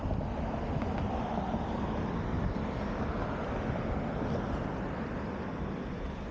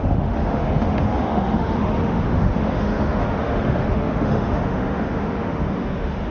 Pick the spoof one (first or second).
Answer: second